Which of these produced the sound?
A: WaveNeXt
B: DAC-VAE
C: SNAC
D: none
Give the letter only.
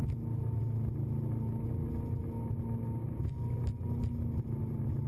D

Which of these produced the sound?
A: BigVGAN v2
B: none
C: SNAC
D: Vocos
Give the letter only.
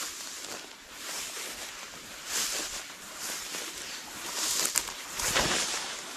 A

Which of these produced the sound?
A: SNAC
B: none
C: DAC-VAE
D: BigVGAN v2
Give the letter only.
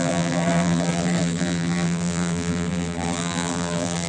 D